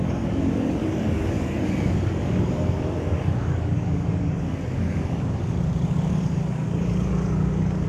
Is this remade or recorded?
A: remade